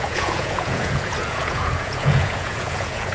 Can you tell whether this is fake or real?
fake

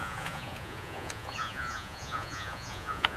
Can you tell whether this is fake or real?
fake